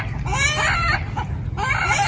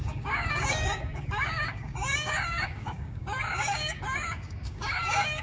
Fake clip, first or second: second